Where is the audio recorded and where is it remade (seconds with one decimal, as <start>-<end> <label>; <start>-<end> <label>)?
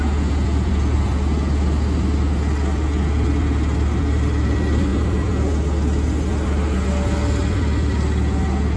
0.0-8.8 recorded